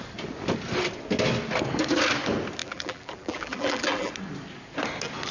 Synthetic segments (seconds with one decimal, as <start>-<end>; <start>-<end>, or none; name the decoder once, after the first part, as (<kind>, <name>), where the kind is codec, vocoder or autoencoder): 2.6-4.1 (vocoder, BigVGAN v2)